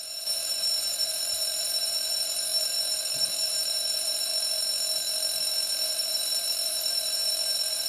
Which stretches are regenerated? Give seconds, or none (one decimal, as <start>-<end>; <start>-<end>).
0.0-4.3; 5.7-7.9